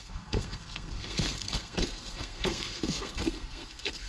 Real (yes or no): no